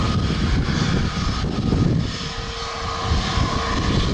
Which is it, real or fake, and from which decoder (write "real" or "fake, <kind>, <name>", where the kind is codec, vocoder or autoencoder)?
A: real